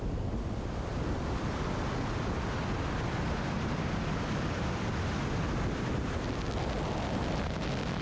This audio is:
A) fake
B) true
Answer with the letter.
B